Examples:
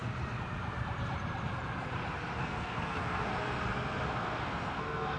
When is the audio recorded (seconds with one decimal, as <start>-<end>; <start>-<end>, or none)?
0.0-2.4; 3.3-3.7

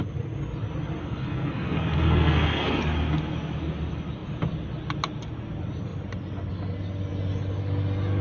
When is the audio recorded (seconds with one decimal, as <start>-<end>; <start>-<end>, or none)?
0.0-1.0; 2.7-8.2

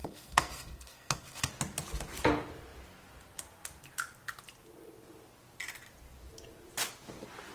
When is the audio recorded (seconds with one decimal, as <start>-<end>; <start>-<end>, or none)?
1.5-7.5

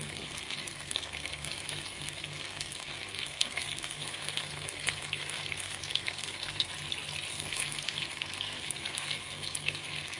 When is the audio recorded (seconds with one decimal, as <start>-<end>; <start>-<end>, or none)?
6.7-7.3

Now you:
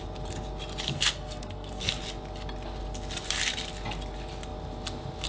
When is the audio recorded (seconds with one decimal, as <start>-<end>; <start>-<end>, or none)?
0.0-0.9; 1.9-5.3

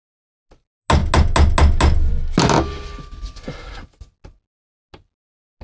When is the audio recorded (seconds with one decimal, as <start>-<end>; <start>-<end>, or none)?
0.0-5.6

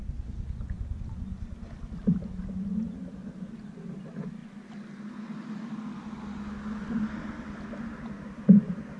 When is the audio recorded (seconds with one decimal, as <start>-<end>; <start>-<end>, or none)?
0.0-9.0